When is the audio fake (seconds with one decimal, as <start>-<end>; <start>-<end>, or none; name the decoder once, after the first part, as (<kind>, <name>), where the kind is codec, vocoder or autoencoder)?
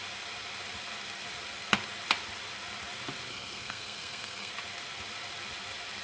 3.3-4.5 (codec, SNAC)